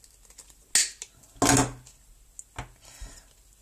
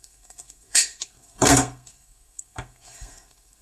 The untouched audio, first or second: first